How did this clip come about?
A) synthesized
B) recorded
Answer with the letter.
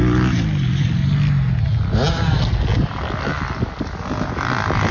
B